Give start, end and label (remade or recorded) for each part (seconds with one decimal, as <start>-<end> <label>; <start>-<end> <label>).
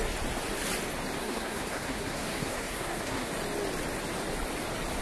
0.0-1.2 recorded; 1.2-3.3 remade; 3.3-5.0 recorded